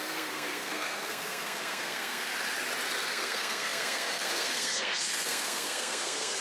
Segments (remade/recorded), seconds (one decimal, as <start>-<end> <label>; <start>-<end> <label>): 0.0-2.3 remade; 2.3-3.1 recorded; 3.1-6.4 remade

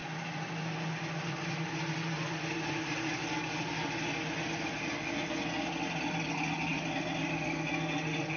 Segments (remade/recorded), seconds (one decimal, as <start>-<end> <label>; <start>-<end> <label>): 0.0-8.4 recorded

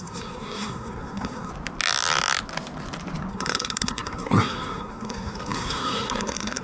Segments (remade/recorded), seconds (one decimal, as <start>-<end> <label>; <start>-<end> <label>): 0.0-1.5 remade; 1.5-3.3 recorded; 3.3-6.6 remade

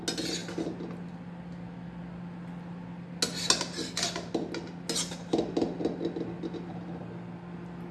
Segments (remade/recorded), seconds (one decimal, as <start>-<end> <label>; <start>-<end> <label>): 0.0-7.9 recorded

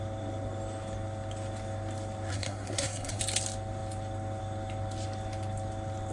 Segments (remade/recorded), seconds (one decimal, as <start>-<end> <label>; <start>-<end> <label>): 0.0-2.3 recorded; 2.3-3.2 remade; 3.2-6.1 recorded

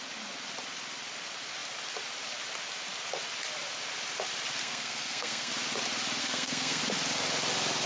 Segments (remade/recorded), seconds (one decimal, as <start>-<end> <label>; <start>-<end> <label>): 0.0-4.6 recorded; 4.6-5.5 remade; 5.5-6.2 recorded; 6.2-6.8 remade; 6.8-7.9 recorded